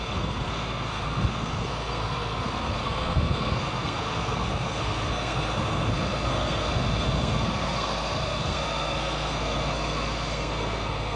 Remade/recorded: remade